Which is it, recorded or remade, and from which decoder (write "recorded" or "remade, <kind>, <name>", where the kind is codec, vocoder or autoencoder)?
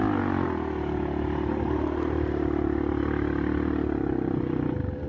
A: recorded